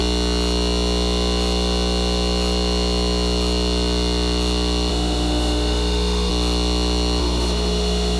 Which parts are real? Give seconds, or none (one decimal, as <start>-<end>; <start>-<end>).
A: 0.0-4.9; 6.3-7.2